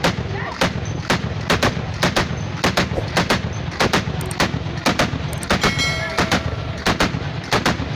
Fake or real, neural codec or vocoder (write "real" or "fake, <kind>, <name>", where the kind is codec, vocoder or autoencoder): real